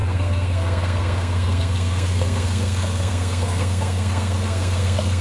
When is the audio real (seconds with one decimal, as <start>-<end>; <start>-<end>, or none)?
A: none